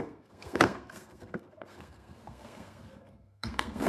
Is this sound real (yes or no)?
no